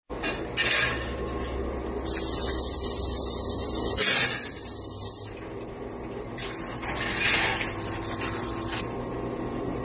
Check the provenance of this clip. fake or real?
real